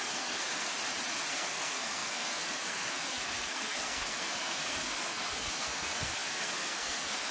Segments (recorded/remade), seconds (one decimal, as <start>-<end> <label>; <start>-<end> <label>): 0.0-0.7 remade; 0.7-1.3 recorded; 1.3-7.3 remade